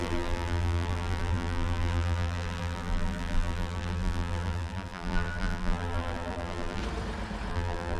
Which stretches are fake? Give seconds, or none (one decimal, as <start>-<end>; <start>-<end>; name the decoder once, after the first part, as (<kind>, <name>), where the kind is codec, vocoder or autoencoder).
0.0-6.8 (vocoder, BigVGAN v2); 7.5-8.0